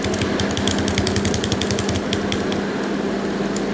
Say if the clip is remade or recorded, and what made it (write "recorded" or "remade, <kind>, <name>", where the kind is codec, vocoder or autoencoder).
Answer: recorded